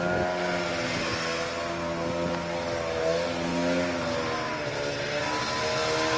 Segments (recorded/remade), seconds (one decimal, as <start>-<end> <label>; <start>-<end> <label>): 0.0-6.2 recorded